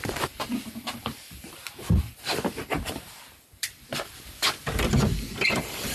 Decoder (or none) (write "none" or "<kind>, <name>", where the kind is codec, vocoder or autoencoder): vocoder, BigVGAN v2